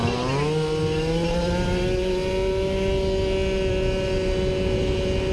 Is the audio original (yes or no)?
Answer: yes